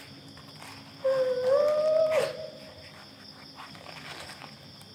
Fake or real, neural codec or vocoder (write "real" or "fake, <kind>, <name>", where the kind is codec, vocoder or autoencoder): real